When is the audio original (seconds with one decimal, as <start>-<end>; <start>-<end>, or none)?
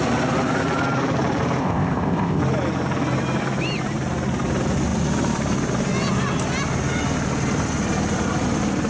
0.0-1.6; 2.4-8.9